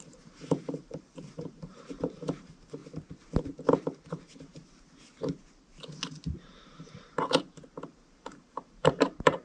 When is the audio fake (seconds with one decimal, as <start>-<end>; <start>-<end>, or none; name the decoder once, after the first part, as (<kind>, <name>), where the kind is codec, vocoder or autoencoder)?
0.0-2.8 (vocoder, BigVGAN v2); 4.1-4.6; 6.5-9.4